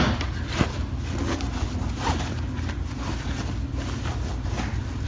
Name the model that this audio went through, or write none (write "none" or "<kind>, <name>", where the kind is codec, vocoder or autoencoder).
none